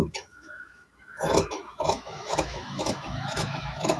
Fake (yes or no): yes